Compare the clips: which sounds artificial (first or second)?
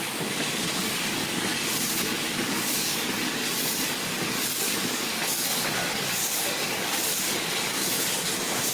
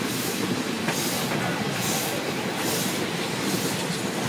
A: first